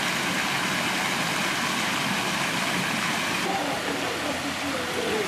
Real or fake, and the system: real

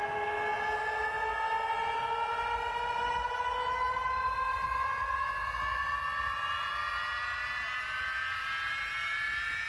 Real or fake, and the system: real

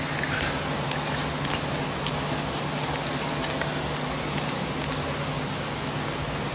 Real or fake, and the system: real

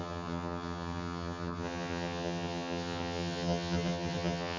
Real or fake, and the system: fake, vocoder, HiFi-GAN